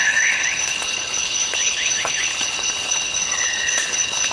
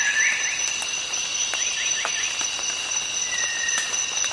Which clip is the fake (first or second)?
first